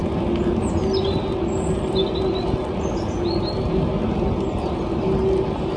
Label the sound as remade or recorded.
recorded